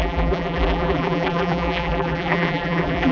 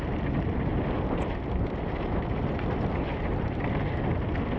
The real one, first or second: second